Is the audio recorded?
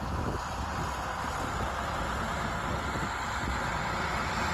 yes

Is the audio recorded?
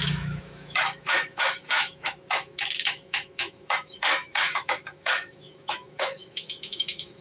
no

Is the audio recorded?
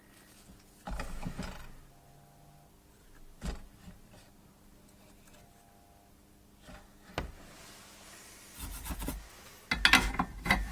yes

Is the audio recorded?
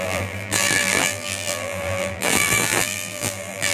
no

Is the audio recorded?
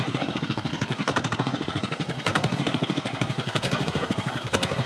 no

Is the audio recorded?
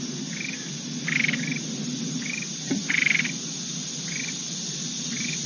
yes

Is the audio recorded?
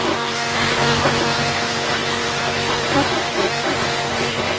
no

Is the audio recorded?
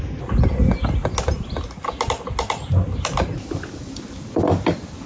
yes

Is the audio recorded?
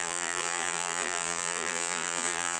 no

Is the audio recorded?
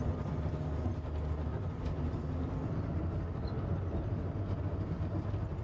yes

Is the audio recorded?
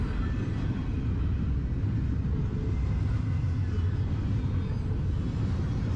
yes